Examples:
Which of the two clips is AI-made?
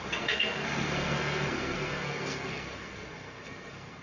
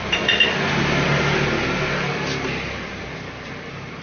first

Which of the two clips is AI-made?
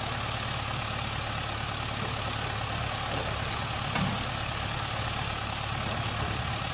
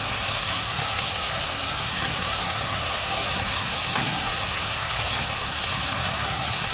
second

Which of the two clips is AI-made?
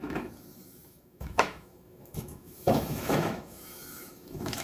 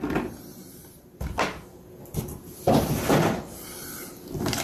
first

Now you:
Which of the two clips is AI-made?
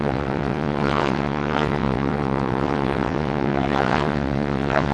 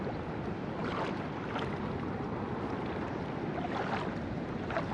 first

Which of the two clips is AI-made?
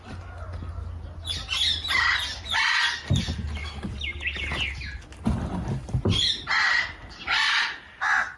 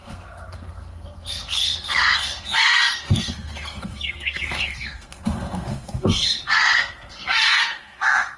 second